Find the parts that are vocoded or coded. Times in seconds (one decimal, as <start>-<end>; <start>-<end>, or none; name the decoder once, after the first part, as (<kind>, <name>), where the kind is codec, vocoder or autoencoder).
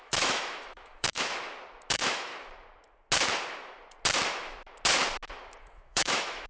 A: 0.0-1.3 (autoencoder, DAC-VAE); 1.9-2.3; 5.6-6.5